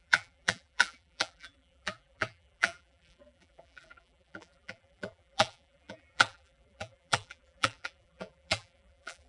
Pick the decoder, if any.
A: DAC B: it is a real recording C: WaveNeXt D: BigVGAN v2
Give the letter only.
D